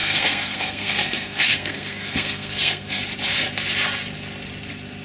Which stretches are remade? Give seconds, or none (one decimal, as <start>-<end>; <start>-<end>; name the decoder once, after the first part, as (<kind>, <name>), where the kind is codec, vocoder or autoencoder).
0.0-3.0 (codec, SNAC)